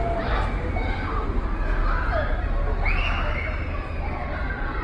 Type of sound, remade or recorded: recorded